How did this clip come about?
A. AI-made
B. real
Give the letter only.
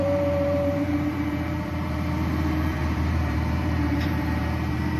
A